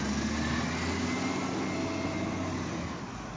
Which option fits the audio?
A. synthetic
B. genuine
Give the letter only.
B